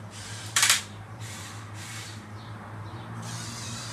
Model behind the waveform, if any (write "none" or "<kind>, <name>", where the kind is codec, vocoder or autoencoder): vocoder, BigVGAN v2